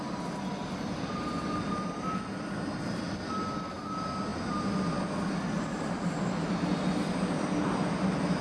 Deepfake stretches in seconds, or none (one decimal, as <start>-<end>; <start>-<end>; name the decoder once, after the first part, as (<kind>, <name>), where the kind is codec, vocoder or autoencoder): none